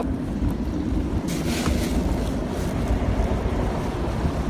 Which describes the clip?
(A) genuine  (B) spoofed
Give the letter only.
A